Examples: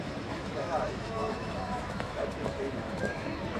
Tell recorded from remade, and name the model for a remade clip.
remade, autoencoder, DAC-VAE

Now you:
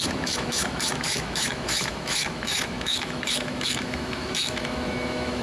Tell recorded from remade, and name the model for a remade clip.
remade, autoencoder, DAC-VAE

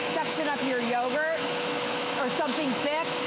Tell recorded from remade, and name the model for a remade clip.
remade, autoencoder, DAC-VAE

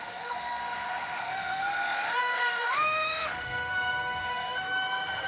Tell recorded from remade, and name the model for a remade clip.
remade, autoencoder, DAC-VAE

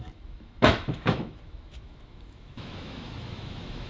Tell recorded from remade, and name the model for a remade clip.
remade, autoencoder, DAC-VAE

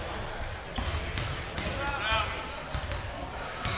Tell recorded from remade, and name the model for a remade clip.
recorded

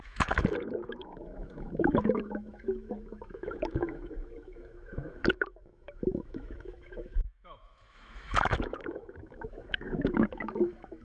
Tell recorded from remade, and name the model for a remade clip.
remade, autoencoder, DAC-VAE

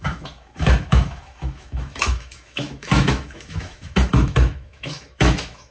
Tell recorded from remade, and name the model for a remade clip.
remade, autoencoder, DAC-VAE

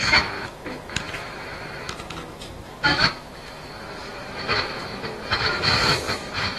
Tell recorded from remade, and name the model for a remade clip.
remade, autoencoder, DAC-VAE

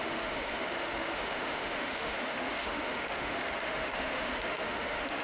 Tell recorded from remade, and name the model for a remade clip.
remade, autoencoder, DAC-VAE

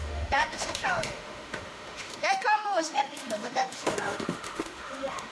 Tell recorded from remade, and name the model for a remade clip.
remade, autoencoder, DAC-VAE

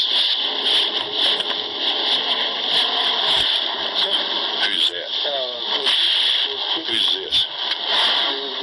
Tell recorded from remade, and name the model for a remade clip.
recorded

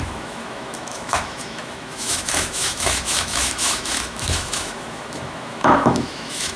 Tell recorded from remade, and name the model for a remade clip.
remade, autoencoder, DAC-VAE